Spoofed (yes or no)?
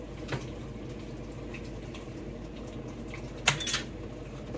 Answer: no